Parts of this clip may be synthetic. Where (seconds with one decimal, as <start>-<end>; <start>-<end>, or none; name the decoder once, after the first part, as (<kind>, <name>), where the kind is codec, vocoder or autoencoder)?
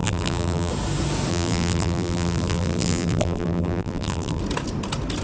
0.0-0.7 (vocoder, BigVGAN v2); 1.3-4.4